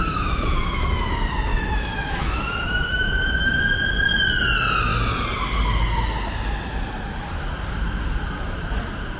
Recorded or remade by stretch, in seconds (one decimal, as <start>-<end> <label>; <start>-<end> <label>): 0.0-1.1 remade; 1.1-1.5 recorded; 1.5-3.6 remade; 3.6-9.2 recorded

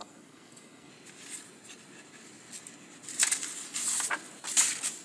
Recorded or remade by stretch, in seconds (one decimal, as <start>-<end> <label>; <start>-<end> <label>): 0.0-0.9 remade; 0.9-5.0 recorded